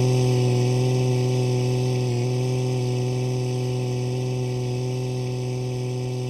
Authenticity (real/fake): real